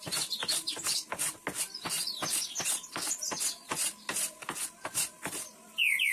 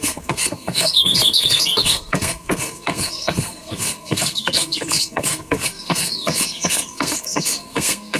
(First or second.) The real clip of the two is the first